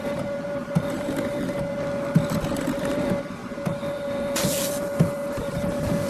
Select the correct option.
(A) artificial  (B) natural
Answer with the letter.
B